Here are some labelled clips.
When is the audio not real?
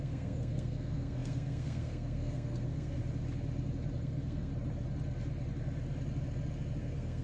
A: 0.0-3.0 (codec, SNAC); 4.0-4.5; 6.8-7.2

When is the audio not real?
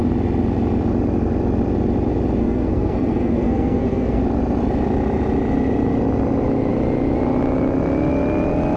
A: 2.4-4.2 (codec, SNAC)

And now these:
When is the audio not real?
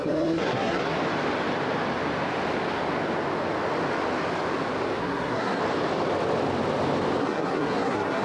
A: 0.0-1.0 (codec, SNAC); 5.0-5.6; 7.2-8.2